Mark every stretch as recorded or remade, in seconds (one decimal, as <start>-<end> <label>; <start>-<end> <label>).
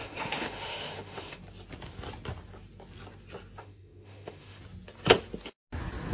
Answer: 0.0-1.4 remade; 1.4-3.6 recorded; 3.6-4.6 remade; 4.6-6.1 recorded